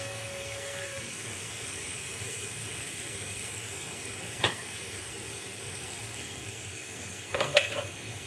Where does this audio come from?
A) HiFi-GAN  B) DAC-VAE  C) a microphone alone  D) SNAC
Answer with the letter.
D